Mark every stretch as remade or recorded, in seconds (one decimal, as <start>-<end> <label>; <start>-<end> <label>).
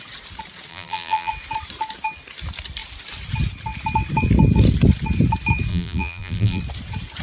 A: 0.0-0.7 recorded; 0.7-1.3 remade; 1.3-5.7 recorded; 5.7-6.6 remade; 6.6-7.2 recorded